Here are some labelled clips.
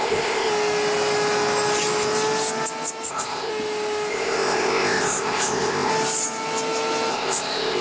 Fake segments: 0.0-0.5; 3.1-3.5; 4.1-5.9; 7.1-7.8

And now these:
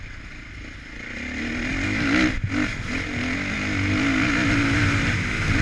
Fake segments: none

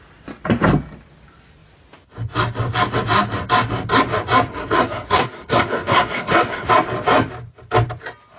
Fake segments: 4.5-6.7

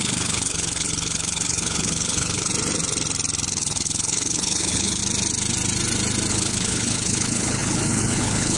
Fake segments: 0.0-2.5; 3.5-5.0; 6.3-8.6

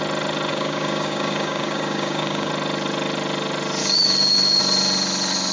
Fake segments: 0.5-2.5; 3.8-4.6

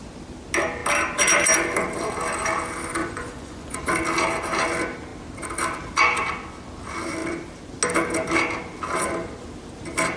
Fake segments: 3.0-3.9

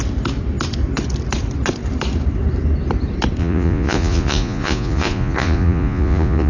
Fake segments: 3.4-6.5